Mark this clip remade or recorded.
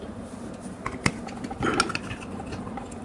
recorded